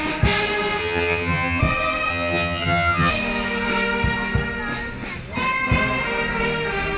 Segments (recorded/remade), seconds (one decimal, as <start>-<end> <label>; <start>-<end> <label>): 0.0-0.8 recorded; 0.8-1.6 remade; 1.6-2.1 recorded; 2.1-3.1 remade; 3.1-7.0 recorded